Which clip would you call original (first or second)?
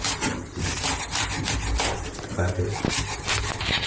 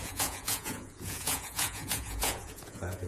first